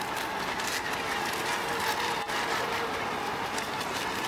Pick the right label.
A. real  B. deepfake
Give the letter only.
A